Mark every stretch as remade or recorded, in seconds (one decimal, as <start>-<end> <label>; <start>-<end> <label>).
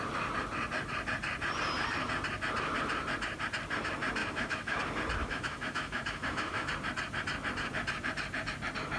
0.0-4.2 recorded; 4.2-4.8 remade; 4.8-5.2 recorded; 5.2-6.7 remade; 6.7-9.0 recorded